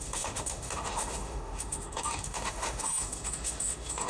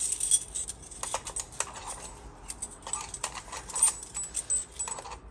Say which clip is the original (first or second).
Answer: second